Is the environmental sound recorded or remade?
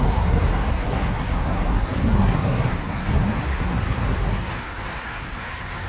remade